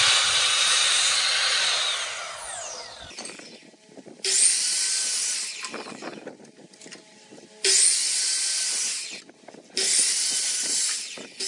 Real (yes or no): yes